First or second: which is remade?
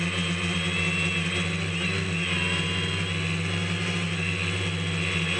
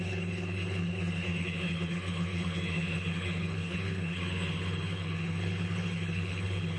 second